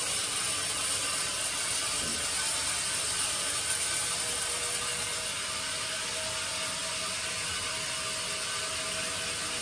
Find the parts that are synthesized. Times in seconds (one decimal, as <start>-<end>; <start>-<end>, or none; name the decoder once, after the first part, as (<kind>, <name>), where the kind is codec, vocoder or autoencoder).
none